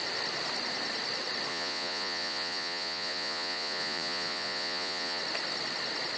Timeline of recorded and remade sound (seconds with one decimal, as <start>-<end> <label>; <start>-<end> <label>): 0.0-1.5 recorded; 1.5-5.2 remade; 5.2-6.2 recorded